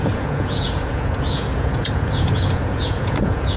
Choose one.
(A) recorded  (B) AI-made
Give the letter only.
B